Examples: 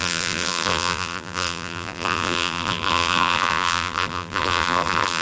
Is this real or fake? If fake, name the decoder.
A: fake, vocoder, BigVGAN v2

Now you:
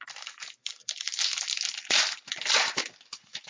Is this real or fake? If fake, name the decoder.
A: real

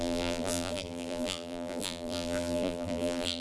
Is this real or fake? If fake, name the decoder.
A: fake, vocoder, BigVGAN v2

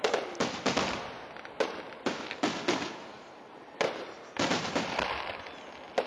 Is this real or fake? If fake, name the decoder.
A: real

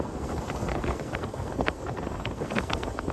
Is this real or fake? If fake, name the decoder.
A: fake, codec, SNAC